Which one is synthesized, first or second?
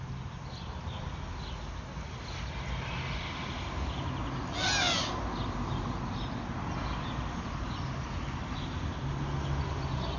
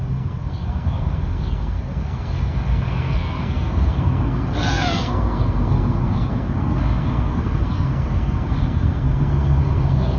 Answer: second